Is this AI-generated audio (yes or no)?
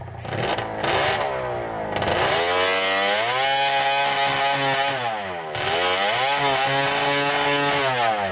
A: no